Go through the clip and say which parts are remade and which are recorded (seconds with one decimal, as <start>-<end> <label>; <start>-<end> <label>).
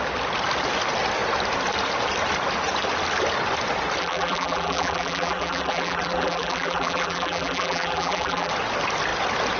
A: 0.0-4.0 recorded; 4.0-8.5 remade; 8.5-9.6 recorded